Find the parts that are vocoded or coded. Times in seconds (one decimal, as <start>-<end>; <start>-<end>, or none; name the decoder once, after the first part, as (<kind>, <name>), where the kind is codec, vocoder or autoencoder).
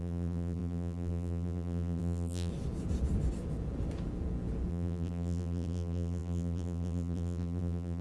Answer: 0.0-2.5 (vocoder, BigVGAN v2); 4.7-8.0